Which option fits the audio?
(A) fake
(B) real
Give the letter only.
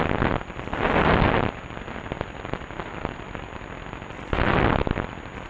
B